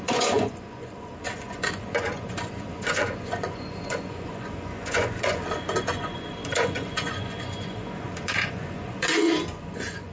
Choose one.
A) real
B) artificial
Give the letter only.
B